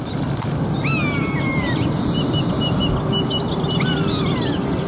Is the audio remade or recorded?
recorded